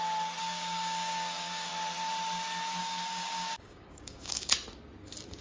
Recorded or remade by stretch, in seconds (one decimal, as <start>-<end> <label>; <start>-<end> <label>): 0.0-0.4 recorded; 0.4-1.7 remade; 1.7-2.8 recorded; 2.8-4.5 remade; 4.5-5.4 recorded